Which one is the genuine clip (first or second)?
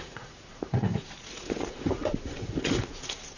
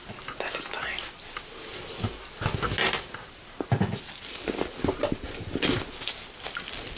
second